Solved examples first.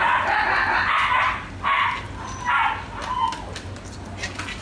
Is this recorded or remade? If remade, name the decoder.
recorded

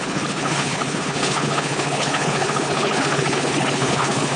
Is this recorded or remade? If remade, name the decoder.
remade, codec, HILCodec